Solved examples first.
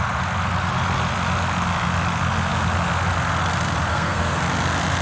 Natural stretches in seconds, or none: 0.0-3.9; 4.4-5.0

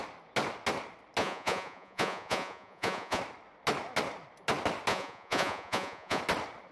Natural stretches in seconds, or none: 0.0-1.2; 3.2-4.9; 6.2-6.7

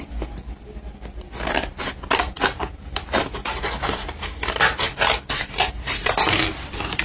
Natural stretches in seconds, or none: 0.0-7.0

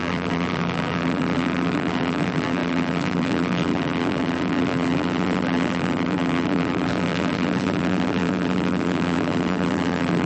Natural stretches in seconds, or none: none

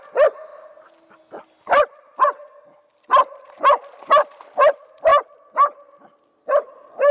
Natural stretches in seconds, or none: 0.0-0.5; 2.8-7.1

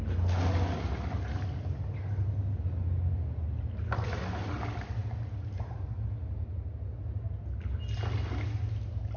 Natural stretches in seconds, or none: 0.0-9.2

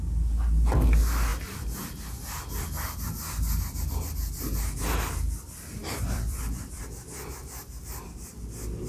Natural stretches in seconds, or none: 0.0-5.8; 6.8-8.9